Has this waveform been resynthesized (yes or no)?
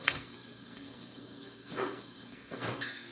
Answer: yes